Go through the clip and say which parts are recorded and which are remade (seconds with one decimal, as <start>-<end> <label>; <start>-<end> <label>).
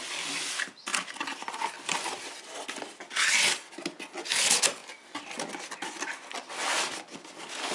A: 0.0-7.7 recorded